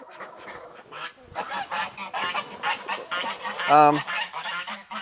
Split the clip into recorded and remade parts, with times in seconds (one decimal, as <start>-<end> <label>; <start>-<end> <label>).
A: 0.0-1.1 remade; 1.1-4.1 recorded; 4.1-5.0 remade